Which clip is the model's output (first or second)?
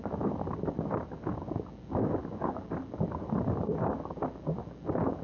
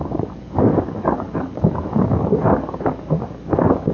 second